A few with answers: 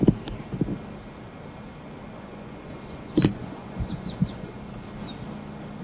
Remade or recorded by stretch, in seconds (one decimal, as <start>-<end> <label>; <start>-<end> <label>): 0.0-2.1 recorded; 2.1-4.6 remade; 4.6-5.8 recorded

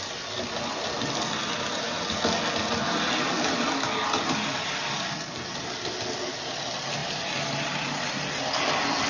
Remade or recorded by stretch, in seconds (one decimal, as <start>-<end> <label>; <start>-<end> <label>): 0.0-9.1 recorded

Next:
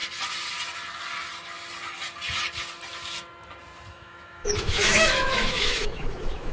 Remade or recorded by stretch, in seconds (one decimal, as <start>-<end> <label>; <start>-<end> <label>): 0.0-3.9 recorded; 3.9-6.5 remade

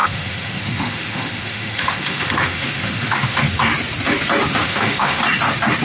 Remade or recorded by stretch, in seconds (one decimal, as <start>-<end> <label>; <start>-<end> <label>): 0.0-3.5 remade; 3.5-4.6 recorded; 4.6-5.2 remade; 5.2-5.8 recorded

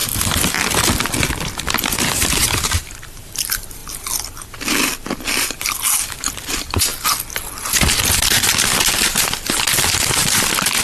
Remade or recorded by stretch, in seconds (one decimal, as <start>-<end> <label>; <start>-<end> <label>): 0.0-2.0 recorded; 2.0-3.8 remade; 3.8-5.4 recorded; 5.4-6.9 remade; 6.9-9.9 recorded; 9.9-10.8 remade

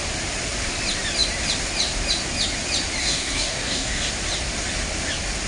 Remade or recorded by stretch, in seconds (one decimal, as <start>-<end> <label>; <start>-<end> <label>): 0.0-3.0 recorded; 3.0-4.1 remade; 4.1-5.5 recorded